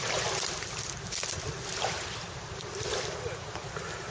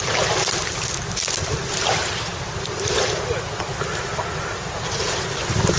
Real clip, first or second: second